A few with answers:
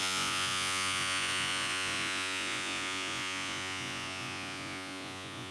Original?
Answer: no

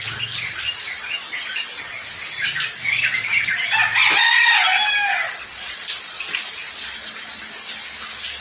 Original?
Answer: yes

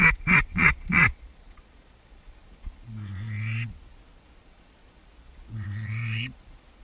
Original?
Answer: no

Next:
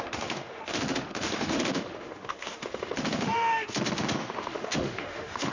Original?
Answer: no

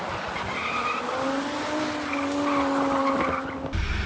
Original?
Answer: yes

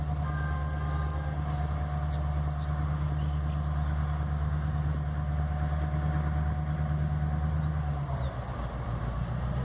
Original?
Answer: yes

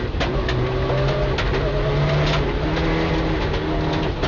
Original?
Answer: yes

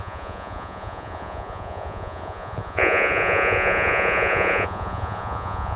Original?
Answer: no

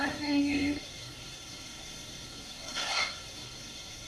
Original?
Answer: no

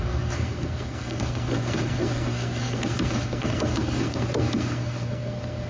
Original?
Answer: no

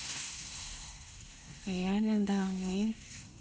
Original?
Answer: no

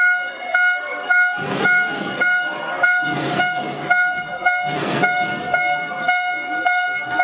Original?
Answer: no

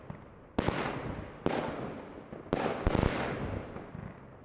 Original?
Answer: yes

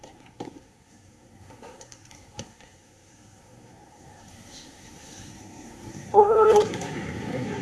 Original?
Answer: no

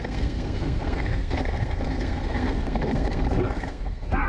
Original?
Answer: no